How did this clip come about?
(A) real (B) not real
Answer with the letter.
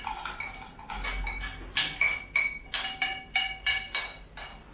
A